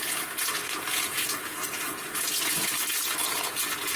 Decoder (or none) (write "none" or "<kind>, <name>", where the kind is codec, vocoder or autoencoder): vocoder, Vocos